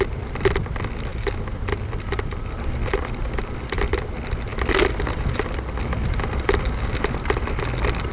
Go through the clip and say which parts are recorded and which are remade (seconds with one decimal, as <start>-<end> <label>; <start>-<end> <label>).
0.0-1.1 recorded; 1.1-3.8 remade; 3.8-4.5 recorded; 4.5-7.5 remade; 7.5-8.1 recorded